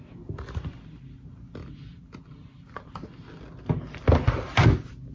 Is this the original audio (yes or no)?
yes